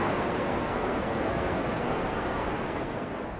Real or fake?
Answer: fake